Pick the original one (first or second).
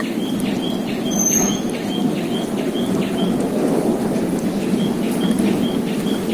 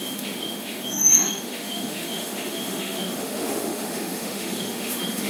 first